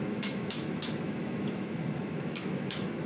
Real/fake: fake